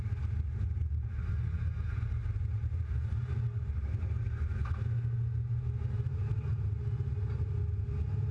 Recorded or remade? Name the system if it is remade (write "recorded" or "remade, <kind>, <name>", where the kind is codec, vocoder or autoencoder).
recorded